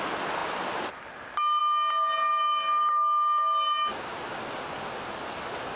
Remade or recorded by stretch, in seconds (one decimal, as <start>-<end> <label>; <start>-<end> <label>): 0.0-5.8 recorded